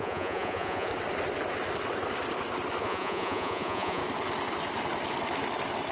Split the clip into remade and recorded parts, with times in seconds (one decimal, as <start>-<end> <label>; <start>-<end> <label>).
0.0-0.9 remade; 0.9-2.8 recorded; 2.8-4.0 remade; 4.0-5.9 recorded